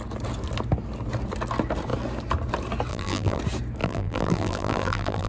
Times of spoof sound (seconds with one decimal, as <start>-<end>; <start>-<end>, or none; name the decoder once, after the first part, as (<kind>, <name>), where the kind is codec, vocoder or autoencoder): 2.9-3.4 (vocoder, BigVGAN v2); 3.8-5.3